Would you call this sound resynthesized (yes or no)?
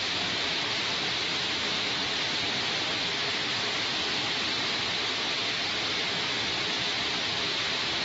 no